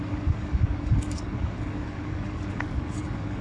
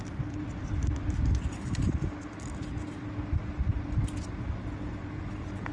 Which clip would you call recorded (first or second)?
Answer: second